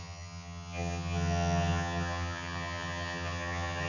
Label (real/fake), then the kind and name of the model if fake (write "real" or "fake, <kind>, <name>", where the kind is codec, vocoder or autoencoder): fake, vocoder, HiFi-GAN